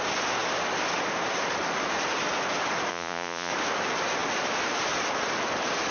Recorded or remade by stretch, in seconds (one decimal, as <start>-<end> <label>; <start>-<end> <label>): 0.0-2.9 recorded; 2.9-3.5 remade; 3.5-5.9 recorded